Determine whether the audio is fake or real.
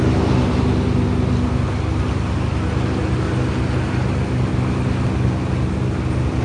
real